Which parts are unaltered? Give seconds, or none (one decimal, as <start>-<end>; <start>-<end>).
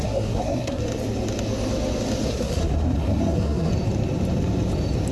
0.8-2.3; 3.7-5.1